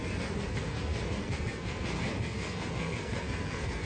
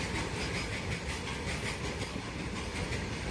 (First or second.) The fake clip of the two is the first